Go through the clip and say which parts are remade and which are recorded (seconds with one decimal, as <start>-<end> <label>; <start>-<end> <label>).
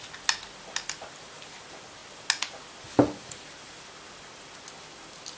0.0-5.4 recorded